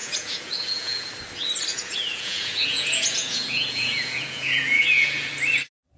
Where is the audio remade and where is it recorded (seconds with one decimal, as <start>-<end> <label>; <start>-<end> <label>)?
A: 0.0-1.1 remade; 1.1-1.7 recorded; 1.7-5.3 remade; 5.3-6.0 recorded